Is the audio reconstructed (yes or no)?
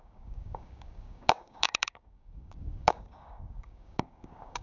yes